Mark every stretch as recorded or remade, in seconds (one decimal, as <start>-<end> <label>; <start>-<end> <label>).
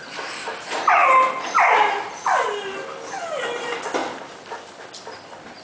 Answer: 0.0-1.0 remade; 1.0-3.4 recorded; 3.4-4.0 remade; 4.0-5.1 recorded; 5.1-5.6 remade